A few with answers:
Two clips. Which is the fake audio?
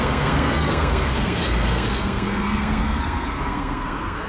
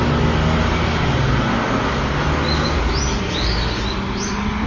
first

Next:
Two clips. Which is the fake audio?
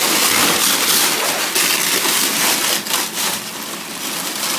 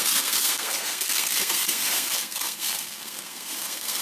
second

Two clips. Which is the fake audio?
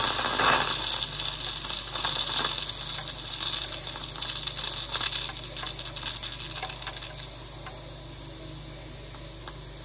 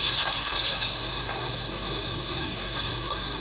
second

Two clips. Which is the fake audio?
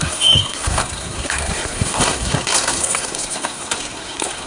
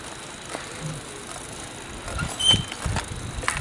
first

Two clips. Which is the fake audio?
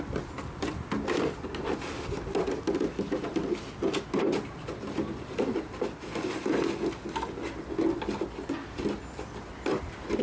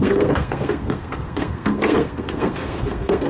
second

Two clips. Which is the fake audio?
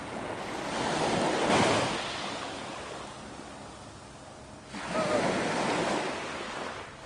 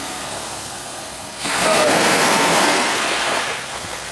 second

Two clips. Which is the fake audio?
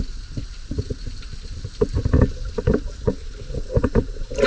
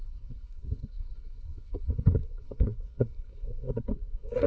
second